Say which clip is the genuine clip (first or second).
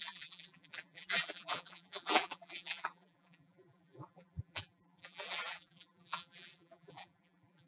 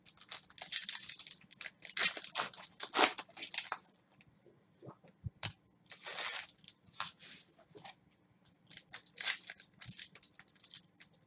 second